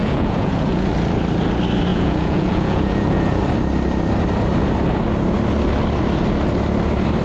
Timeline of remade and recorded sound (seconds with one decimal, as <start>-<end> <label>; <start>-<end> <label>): 0.0-0.9 remade; 0.9-1.9 recorded; 1.9-3.4 remade; 3.4-7.2 recorded